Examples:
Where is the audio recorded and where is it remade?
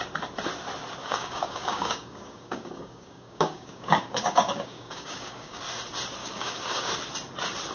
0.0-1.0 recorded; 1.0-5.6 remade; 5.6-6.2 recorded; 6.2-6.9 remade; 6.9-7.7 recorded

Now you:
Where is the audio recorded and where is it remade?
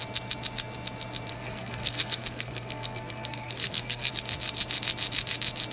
0.0-1.3 recorded; 1.3-4.1 remade; 4.1-5.7 recorded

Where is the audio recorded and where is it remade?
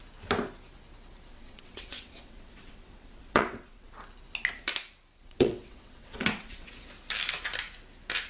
0.0-1.3 recorded; 1.3-3.9 remade; 3.9-5.2 recorded; 5.2-6.7 remade; 6.7-8.3 recorded